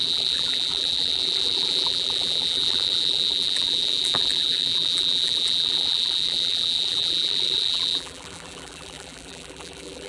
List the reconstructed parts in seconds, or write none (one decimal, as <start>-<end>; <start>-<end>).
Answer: 0.0-10.1